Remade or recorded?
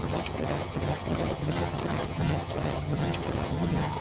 remade